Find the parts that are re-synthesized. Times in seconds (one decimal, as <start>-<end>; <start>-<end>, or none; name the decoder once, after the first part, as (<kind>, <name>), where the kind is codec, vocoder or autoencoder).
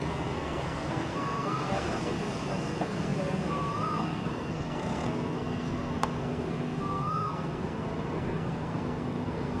0.0-9.6 (codec, SNAC)